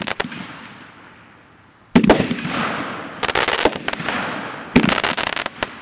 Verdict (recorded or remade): recorded